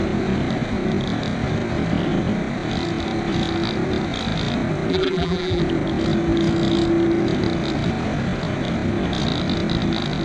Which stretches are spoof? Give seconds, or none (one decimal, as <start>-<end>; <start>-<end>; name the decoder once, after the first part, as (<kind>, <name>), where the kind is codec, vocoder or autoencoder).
4.9-5.6 (vocoder, BigVGAN v2)